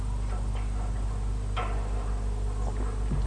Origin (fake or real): real